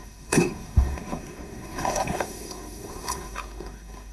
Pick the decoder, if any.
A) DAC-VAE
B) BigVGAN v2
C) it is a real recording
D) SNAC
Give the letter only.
D